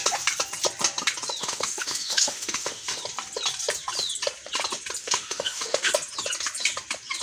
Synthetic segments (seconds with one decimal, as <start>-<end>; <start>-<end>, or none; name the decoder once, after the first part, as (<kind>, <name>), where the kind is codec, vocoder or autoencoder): 1.4-3.0 (autoencoder, DAC-VAE); 5.0-5.9